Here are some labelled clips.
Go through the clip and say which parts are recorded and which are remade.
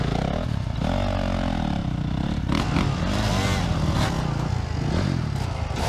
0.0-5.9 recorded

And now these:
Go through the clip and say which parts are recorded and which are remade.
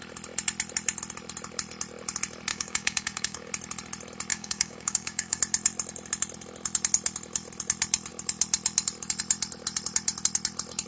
0.0-2.5 recorded; 2.5-3.5 remade; 3.5-4.3 recorded; 4.3-5.4 remade; 5.4-10.9 recorded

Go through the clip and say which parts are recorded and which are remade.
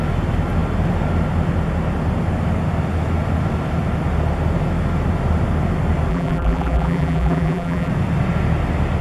0.0-6.1 recorded; 6.1-7.9 remade; 7.9-9.0 recorded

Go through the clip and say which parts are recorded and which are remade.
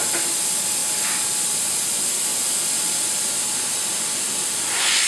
0.0-5.1 recorded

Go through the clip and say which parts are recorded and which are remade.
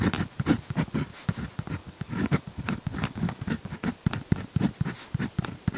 0.0-1.8 recorded; 1.8-3.9 remade; 3.9-5.8 recorded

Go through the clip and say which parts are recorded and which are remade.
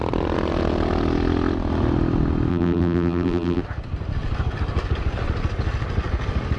0.0-2.5 recorded; 2.5-3.6 remade; 3.6-6.6 recorded